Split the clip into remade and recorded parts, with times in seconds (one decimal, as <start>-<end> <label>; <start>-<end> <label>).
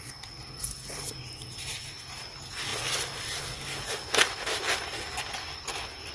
0.0-6.1 recorded